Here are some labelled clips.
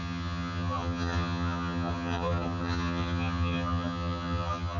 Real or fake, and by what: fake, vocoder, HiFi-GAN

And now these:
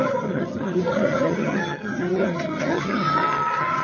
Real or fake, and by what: fake, vocoder, HiFi-GAN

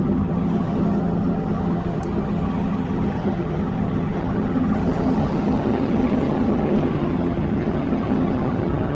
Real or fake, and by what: fake, vocoder, HiFi-GAN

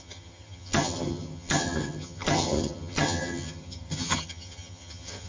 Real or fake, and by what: fake, vocoder, HiFi-GAN